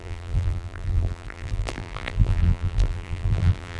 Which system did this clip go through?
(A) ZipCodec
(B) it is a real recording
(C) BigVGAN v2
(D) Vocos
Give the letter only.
C